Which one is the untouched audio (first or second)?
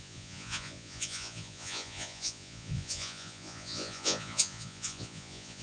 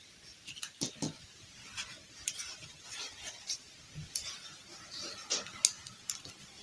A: second